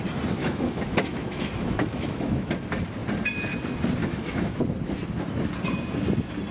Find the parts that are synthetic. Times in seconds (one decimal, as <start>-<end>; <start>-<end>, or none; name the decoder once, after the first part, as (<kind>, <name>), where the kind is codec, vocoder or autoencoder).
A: 0.4-2.5 (autoencoder, DAC-VAE); 4.0-4.6